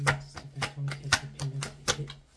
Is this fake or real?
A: real